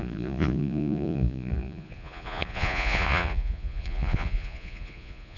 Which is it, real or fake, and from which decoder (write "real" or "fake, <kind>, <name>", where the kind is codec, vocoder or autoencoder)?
fake, vocoder, Vocos